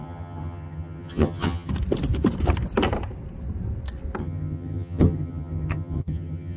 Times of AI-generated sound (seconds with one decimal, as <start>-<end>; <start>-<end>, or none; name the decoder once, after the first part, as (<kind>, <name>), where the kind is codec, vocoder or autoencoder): 0.0-1.7 (vocoder, HiFi-GAN); 4.2-6.6